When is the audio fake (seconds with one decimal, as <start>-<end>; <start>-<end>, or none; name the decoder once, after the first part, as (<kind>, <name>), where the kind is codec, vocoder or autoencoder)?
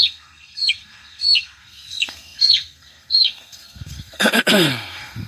0.0-5.3 (codec, SNAC)